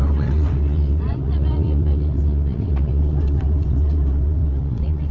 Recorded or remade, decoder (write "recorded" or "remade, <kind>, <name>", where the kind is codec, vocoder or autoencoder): remade, vocoder, WaveNeXt